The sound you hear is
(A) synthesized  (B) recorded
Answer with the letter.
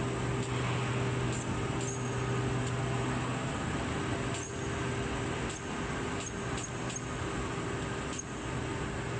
B